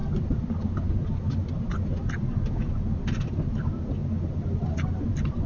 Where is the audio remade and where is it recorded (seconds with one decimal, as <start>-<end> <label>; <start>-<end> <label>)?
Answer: 0.0-5.5 recorded